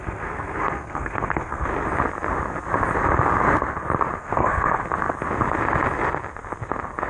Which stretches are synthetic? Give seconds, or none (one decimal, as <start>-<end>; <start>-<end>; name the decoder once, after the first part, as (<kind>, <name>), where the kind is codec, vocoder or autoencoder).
0.0-1.7 (codec, SNAC); 4.2-4.8